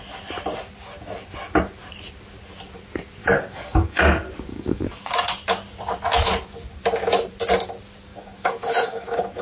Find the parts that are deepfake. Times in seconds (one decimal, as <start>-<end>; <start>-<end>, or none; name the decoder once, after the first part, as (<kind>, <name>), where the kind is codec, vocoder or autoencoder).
3.2-4.0 (codec, DAC); 4.5-5.1; 8.1-9.4